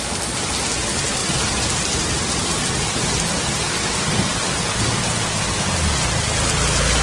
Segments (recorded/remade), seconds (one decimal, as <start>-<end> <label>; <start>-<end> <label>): 0.0-1.2 recorded; 1.2-3.0 remade; 3.0-7.0 recorded